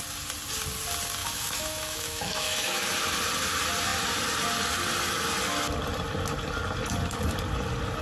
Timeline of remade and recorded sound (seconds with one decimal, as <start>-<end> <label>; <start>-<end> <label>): 0.0-1.2 recorded; 1.2-2.9 remade; 2.9-8.0 recorded